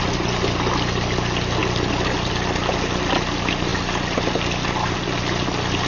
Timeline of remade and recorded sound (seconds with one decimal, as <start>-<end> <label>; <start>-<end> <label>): 0.0-5.9 recorded

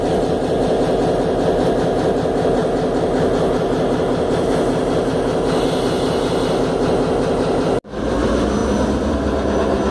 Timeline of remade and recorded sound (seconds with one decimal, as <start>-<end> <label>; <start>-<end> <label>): 0.0-9.9 recorded

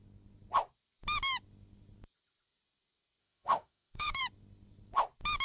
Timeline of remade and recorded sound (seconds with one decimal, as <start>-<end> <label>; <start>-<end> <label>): 0.0-3.2 recorded; 3.2-4.2 remade; 4.2-5.4 recorded

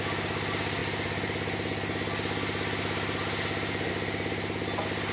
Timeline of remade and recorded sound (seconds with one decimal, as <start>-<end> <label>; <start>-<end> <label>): 0.0-5.1 recorded

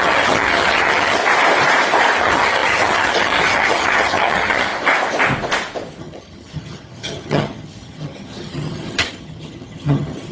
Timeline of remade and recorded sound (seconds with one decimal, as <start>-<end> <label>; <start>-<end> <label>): 0.0-1.2 remade; 1.2-2.2 recorded; 2.2-4.7 remade; 4.7-6.0 recorded; 6.0-10.3 remade

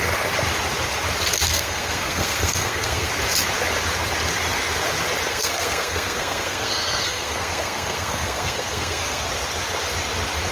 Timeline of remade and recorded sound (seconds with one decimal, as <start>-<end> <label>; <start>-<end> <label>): 0.0-1.5 recorded; 1.5-3.1 remade; 3.1-5.3 recorded; 5.3-9.3 remade; 9.3-10.5 recorded